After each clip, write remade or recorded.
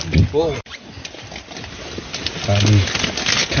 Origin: recorded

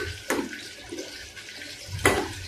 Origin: recorded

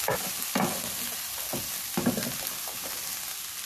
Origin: recorded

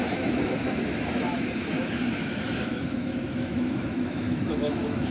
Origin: remade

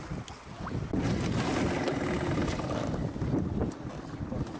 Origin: recorded